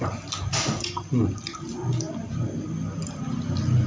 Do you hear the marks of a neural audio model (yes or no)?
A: no